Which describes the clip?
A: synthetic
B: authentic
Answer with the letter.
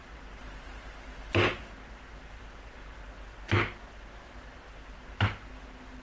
B